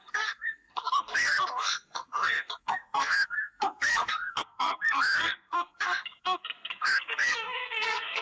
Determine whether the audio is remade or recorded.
remade